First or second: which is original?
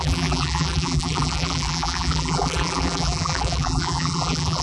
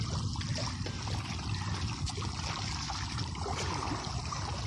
second